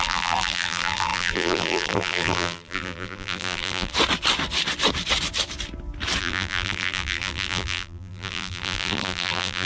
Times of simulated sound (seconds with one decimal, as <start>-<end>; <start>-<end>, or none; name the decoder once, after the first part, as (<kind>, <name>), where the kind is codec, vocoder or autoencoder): 0.0-3.9 (vocoder, BigVGAN v2); 6.2-9.7

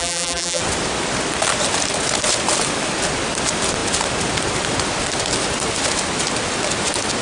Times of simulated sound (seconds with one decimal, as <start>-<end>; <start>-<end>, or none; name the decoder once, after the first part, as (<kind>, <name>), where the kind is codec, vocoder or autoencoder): 0.0-0.6 (vocoder, BigVGAN v2)

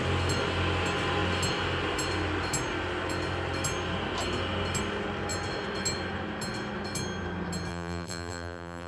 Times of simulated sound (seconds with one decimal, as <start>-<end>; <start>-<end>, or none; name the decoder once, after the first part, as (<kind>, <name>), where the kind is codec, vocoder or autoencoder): 7.7-8.9 (vocoder, BigVGAN v2)

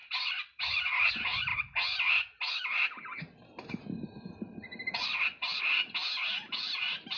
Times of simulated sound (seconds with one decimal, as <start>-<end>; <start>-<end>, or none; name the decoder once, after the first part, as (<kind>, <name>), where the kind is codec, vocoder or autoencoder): 0.0-1.1 (vocoder, BigVGAN v2)

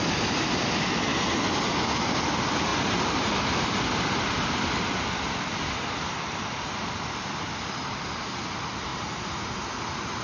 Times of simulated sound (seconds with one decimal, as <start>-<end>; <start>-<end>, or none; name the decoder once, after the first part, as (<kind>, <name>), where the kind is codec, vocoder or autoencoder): 0.0-1.1 (vocoder, BigVGAN v2); 2.1-8.9

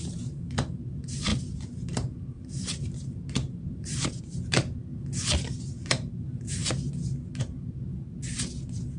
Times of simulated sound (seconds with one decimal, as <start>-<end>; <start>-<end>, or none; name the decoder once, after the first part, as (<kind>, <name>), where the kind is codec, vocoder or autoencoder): 0.0-4.9 (vocoder, BigVGAN v2); 5.4-6.6; 7.4-7.9

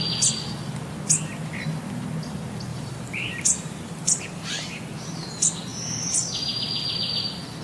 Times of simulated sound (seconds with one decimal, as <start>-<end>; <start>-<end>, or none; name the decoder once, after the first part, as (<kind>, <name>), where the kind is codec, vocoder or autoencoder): 2.7-4.8 (vocoder, BigVGAN v2); 5.7-6.3